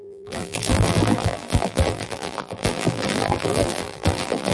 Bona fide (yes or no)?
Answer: no